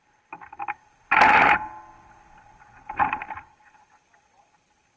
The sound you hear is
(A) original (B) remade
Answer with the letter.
A